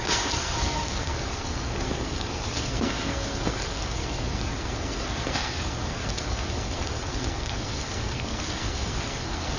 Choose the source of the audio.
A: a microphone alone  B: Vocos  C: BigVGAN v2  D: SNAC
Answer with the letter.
D